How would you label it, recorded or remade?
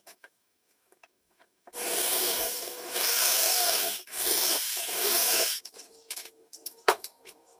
remade